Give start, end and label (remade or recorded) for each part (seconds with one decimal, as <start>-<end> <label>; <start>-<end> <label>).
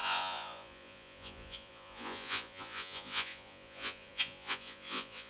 0.0-5.3 remade